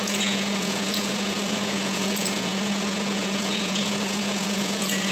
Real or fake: fake